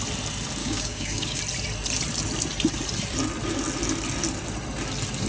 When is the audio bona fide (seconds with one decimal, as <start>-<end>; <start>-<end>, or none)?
0.0-0.6; 1.4-5.3